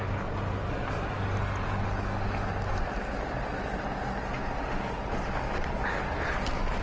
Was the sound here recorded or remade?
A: recorded